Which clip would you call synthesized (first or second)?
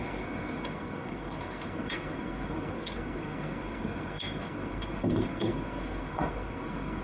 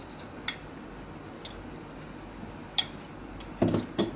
first